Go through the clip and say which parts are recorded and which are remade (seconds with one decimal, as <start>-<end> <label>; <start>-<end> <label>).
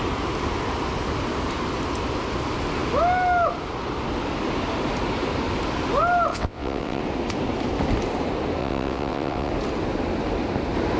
0.0-6.3 recorded; 6.3-7.0 remade; 7.0-8.6 recorded; 8.6-9.5 remade; 9.5-11.0 recorded